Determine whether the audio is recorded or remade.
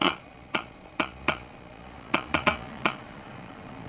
remade